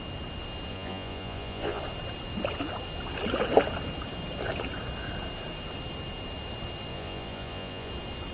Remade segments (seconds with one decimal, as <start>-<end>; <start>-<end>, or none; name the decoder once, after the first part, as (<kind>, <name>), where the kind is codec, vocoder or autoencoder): 0.7-1.8 (vocoder, Vocos); 6.9-7.9